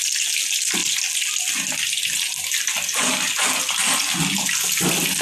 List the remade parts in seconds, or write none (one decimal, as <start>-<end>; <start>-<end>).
none